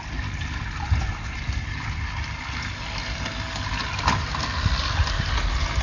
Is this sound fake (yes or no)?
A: no